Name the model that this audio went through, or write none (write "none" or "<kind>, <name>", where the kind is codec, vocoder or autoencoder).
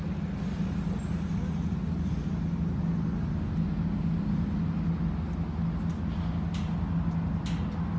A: none